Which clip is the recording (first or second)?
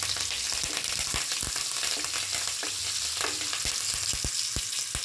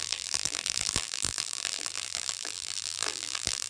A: first